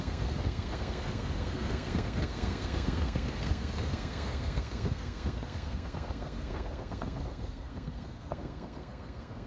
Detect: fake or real fake